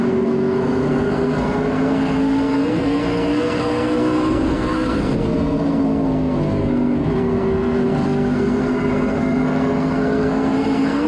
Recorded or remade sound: remade